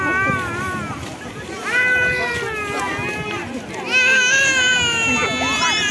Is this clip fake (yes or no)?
no